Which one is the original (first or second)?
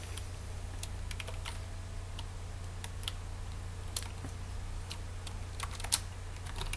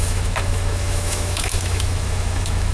first